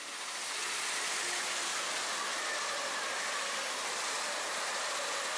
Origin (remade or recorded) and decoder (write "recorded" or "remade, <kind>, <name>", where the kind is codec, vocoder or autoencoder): recorded